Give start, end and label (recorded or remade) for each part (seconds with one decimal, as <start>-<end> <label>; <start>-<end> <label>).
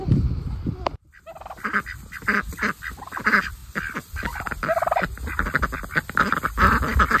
0.0-7.2 recorded